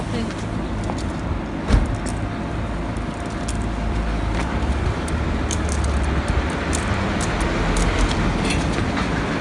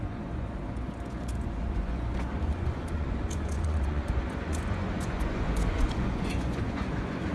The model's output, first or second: second